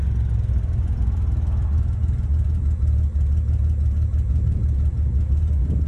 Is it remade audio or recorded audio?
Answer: recorded